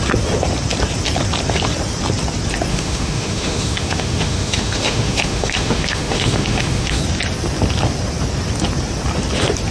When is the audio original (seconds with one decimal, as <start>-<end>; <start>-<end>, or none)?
0.0-2.7; 7.0-9.7